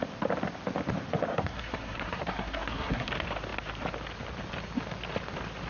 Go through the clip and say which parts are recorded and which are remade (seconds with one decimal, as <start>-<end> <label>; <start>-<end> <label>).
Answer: 0.0-1.3 recorded; 1.3-3.1 remade; 3.1-5.7 recorded